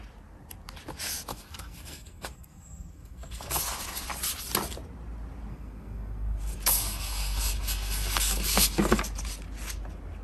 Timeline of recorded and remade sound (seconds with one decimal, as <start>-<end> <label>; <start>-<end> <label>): 0.0-1.3 recorded; 1.3-3.6 remade; 3.6-5.5 recorded; 5.5-9.0 remade; 9.0-10.2 recorded